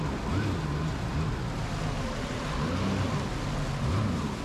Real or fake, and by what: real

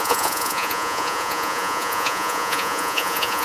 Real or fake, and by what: fake, vocoder, Vocos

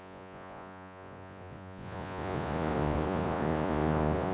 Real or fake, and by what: fake, vocoder, Vocos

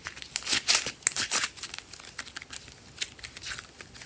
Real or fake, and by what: real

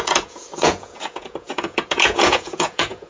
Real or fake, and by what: fake, vocoder, Vocos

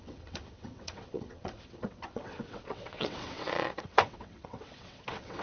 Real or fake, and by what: fake, vocoder, WaveNeXt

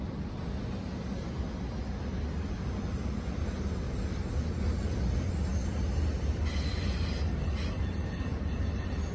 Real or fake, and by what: real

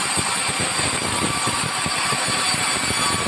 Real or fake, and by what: real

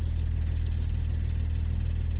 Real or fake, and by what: real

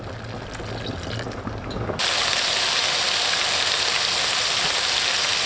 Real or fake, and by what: real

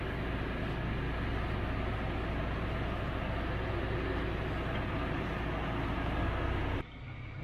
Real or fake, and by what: real